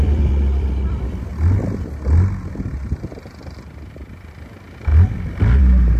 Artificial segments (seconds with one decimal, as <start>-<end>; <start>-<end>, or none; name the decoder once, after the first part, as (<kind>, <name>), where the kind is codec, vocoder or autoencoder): 0.0-1.3 (vocoder, BigVGAN v2); 4.3-4.9